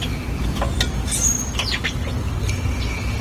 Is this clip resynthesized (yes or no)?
no